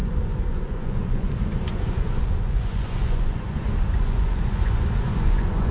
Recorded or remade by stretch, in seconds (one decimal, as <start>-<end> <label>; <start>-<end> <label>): 0.0-5.7 remade